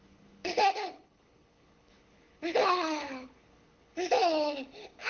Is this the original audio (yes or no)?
no